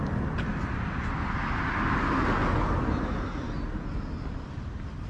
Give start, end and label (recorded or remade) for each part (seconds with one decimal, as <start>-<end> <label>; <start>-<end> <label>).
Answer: 0.0-5.1 recorded